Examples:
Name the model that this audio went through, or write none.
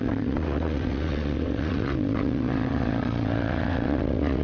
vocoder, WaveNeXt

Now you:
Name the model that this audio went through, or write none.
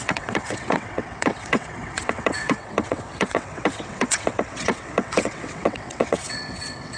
vocoder, WaveNeXt